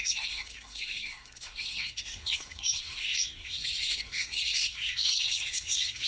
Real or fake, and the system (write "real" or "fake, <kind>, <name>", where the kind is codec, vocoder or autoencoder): fake, codec, SNAC